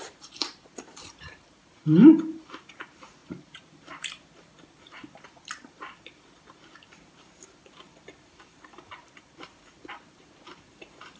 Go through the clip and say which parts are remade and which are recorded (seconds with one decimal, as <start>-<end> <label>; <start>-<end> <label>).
0.0-11.2 remade